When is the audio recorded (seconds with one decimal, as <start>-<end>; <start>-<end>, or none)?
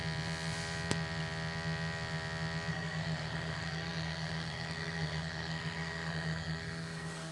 0.0-2.7